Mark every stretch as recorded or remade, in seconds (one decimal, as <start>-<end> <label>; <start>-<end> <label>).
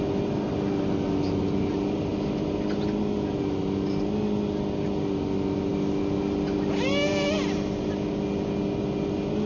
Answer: 0.0-9.5 recorded